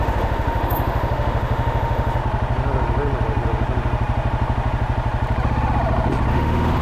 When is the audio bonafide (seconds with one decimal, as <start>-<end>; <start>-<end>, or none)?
2.2-6.3

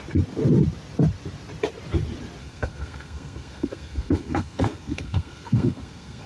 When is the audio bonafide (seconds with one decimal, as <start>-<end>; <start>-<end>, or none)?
0.0-2.4